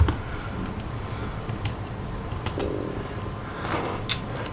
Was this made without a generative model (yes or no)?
yes